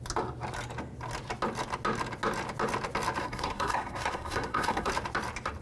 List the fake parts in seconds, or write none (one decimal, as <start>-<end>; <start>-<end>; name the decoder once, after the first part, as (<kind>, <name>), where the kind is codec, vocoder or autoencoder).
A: 3.2-4.9 (codec, SNAC)